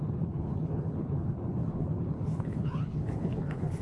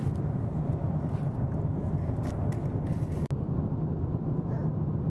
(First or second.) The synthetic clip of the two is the first